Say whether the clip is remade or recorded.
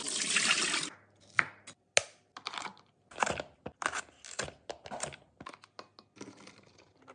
recorded